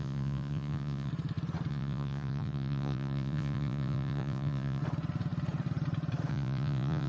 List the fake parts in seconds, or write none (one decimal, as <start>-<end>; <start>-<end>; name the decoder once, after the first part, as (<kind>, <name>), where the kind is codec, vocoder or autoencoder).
0.0-1.1 (vocoder, Vocos); 1.7-4.8; 6.3-7.1